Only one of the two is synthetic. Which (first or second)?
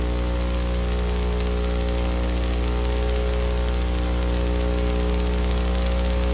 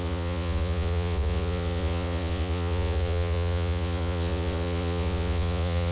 second